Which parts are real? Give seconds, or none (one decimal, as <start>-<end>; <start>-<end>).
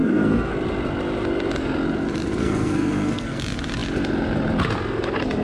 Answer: 0.5-2.4; 3.4-5.4